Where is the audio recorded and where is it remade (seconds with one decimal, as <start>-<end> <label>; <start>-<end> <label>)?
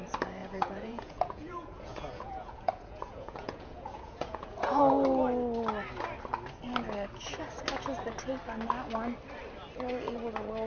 0.0-0.4 recorded; 0.4-4.8 remade; 4.8-10.7 recorded